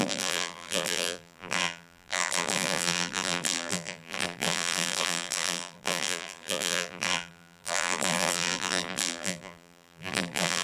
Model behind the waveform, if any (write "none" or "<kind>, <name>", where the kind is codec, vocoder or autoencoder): vocoder, BigVGAN v2